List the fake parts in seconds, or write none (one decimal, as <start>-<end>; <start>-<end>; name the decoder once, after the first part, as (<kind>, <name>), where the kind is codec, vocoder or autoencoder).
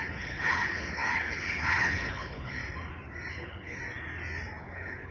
0.0-2.6 (codec, HILCodec); 3.3-3.8; 4.6-5.1